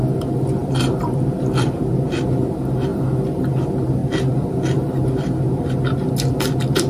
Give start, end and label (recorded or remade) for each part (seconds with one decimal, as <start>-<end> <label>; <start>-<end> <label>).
0.0-0.6 recorded; 0.6-1.9 remade; 1.9-6.9 recorded